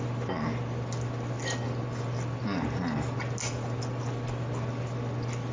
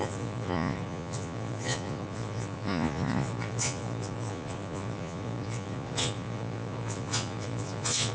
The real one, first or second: first